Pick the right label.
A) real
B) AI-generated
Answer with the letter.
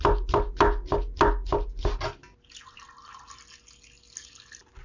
A